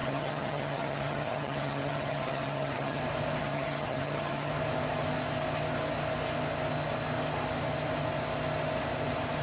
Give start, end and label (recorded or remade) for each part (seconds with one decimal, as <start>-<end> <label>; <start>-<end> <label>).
0.0-3.0 remade; 3.0-3.4 recorded; 3.4-4.5 remade; 4.5-9.4 recorded